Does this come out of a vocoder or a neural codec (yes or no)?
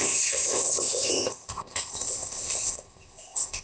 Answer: yes